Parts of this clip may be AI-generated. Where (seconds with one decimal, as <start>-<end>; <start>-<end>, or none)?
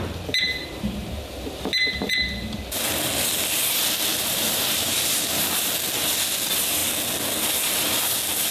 0.6-2.1; 4.1-5.6